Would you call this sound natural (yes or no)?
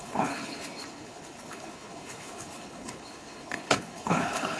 no